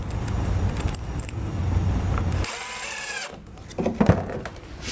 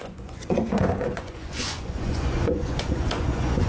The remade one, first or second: second